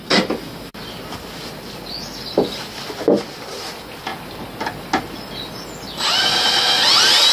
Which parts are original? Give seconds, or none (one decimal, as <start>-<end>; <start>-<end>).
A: 0.0-7.3